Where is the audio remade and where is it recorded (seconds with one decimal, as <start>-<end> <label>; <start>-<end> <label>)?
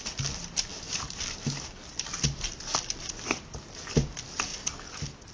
0.0-5.3 recorded